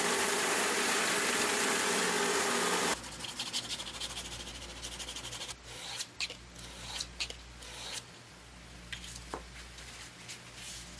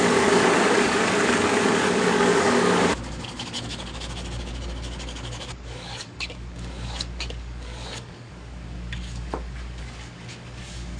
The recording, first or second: first